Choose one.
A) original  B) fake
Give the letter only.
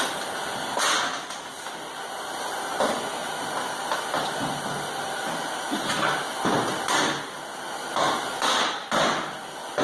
A